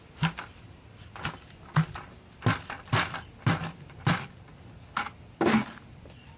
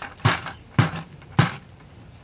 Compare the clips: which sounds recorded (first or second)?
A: first